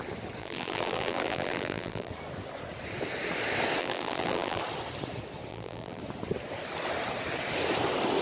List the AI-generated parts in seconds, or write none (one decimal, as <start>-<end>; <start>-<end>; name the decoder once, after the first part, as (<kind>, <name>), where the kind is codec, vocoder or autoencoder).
0.4-2.1 (vocoder, BigVGAN v2); 3.8-4.6; 5.5-6.0